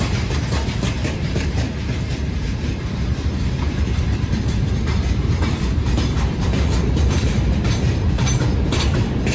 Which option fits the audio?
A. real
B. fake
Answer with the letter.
B